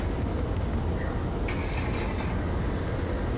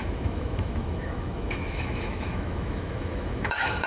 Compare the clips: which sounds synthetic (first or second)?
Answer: second